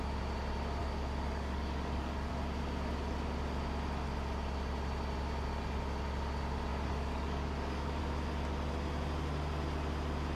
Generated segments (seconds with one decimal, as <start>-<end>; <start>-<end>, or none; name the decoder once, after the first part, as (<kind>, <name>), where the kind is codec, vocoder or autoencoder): 0.8-2.3 (codec, DAC); 6.7-8.0